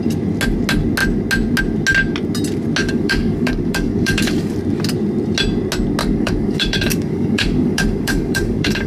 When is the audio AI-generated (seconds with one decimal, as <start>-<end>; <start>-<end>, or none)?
2.8-4.5; 6.0-8.9